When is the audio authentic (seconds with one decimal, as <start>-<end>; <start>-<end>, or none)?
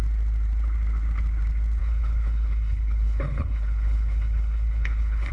0.0-1.8